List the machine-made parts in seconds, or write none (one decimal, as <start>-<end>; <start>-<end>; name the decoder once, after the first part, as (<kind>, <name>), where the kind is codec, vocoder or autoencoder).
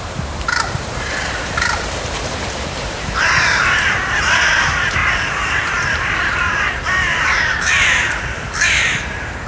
0.0-5.0 (vocoder, BigVGAN v2); 5.6-9.5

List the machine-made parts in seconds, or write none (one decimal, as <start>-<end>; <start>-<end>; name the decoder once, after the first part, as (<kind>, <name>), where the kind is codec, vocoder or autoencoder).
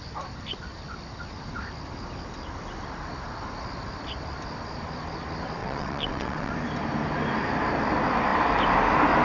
5.6-6.5 (vocoder, WaveNeXt)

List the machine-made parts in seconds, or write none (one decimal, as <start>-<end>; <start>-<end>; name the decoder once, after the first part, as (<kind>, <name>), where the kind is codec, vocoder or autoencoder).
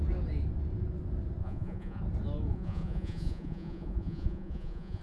1.4-2.0 (vocoder, Vocos); 2.5-5.0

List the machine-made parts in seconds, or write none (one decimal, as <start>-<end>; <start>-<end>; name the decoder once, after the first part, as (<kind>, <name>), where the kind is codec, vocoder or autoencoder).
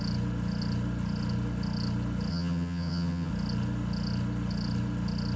2.3-3.3 (vocoder, HiFi-GAN)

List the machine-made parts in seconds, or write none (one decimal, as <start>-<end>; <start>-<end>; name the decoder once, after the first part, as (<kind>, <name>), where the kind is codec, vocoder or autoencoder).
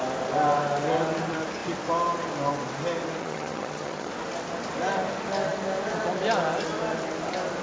3.2-4.1 (vocoder, HiFi-GAN)